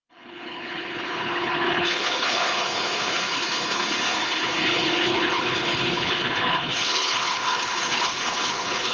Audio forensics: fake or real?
fake